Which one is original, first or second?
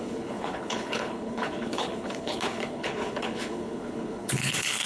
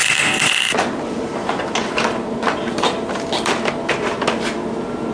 second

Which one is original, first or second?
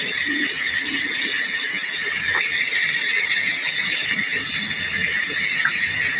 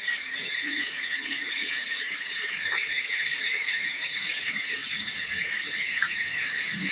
first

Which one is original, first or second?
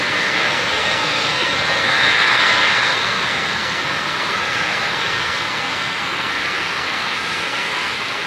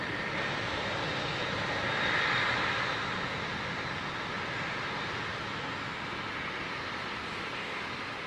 second